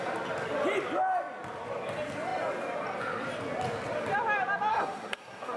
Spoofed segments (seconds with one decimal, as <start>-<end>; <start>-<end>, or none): 4.7-5.6